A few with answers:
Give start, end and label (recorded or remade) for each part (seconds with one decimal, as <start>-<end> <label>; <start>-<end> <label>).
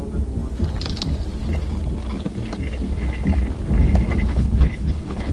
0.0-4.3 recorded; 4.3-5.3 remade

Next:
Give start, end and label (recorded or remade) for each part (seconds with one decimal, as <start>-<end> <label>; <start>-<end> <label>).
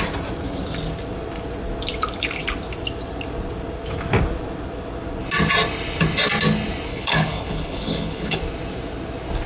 0.0-6.9 recorded; 6.9-8.4 remade; 8.4-9.5 recorded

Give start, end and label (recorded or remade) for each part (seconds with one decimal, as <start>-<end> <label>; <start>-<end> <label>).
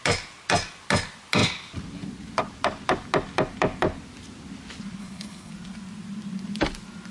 0.0-5.0 recorded; 5.0-5.5 remade; 5.5-7.1 recorded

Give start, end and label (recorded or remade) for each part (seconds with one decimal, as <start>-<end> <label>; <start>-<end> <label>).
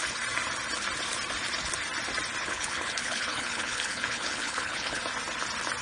0.0-2.4 recorded; 2.4-5.0 remade; 5.0-5.8 recorded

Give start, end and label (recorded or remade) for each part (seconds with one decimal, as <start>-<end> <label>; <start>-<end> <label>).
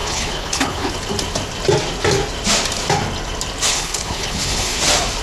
0.0-0.9 remade; 0.9-3.7 recorded; 3.7-4.8 remade; 4.8-5.2 recorded